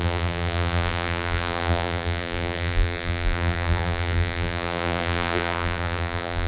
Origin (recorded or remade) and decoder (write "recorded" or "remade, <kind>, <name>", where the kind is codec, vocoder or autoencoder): remade, vocoder, BigVGAN v2